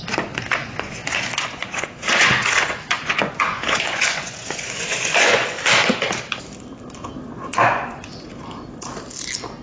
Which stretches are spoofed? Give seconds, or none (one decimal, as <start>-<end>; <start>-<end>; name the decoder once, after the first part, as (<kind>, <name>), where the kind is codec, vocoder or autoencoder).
0.6-5.6 (vocoder, Vocos); 7.3-8.2